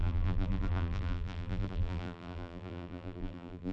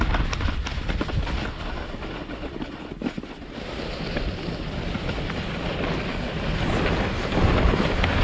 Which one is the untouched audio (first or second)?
second